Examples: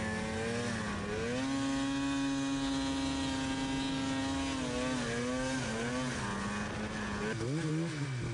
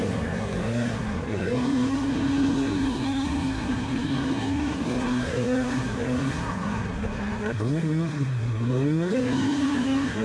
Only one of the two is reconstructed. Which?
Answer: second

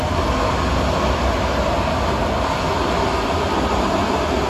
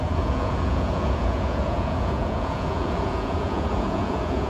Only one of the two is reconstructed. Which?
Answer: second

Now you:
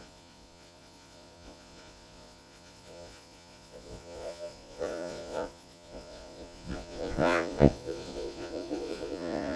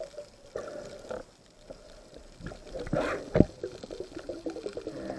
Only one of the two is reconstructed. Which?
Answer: first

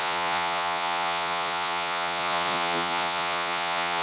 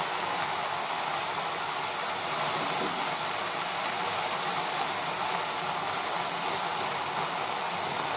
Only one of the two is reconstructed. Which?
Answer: first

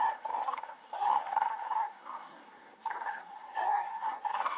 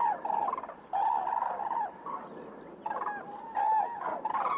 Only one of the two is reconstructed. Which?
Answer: first